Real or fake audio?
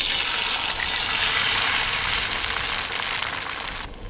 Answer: real